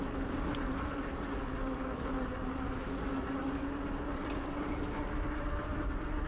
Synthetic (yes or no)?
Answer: no